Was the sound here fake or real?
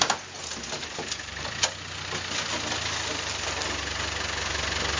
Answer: real